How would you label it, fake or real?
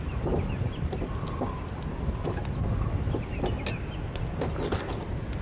real